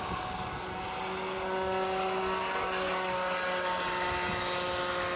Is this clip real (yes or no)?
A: yes